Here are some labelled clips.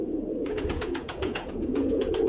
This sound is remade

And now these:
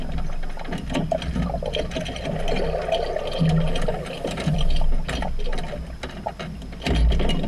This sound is recorded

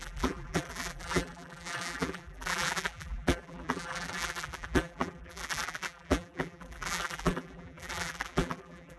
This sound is remade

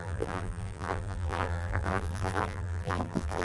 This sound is remade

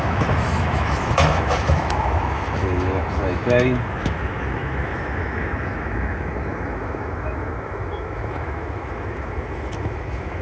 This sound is remade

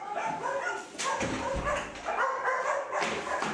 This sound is remade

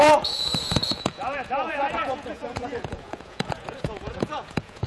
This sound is remade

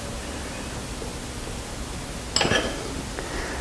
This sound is recorded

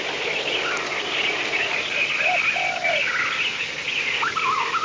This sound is recorded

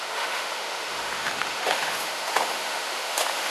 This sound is remade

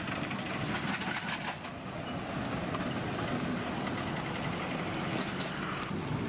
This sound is recorded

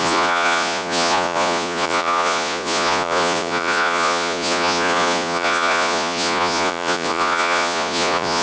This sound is remade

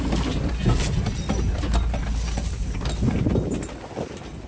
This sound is recorded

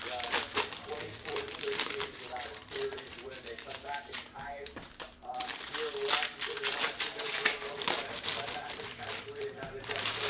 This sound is remade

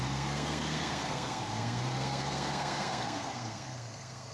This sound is remade